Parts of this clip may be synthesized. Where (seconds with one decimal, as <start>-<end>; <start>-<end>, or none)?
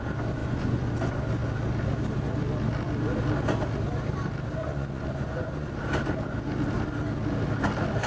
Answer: 0.4-0.9; 4.6-5.8